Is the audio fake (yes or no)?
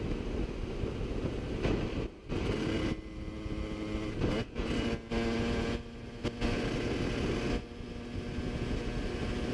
no